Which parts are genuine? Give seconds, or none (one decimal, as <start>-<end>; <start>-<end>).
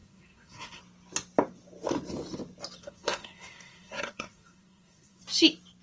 0.8-2.8; 5.2-5.8